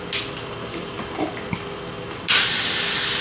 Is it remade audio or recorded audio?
recorded